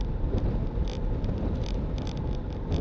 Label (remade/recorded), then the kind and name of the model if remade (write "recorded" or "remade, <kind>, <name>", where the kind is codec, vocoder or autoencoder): recorded